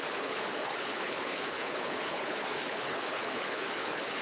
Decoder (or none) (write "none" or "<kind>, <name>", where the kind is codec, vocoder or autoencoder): codec, HILCodec